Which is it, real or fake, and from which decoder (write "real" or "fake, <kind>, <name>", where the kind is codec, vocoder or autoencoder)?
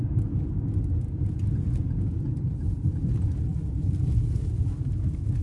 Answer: real